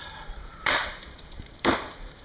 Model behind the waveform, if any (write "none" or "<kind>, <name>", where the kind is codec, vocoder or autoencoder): vocoder, BigVGAN v2